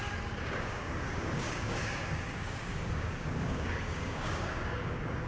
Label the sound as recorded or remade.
remade